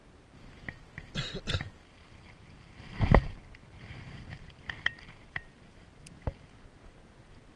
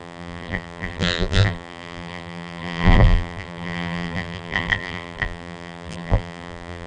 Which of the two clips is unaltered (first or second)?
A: first